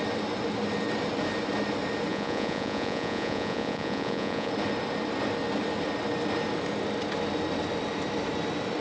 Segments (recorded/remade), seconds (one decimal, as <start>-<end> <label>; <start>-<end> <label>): 0.0-2.1 recorded; 2.1-4.5 remade; 4.5-8.8 recorded